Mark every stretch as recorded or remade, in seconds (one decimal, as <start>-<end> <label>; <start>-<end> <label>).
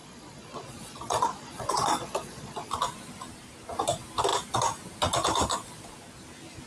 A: 0.0-2.8 remade; 2.8-6.7 recorded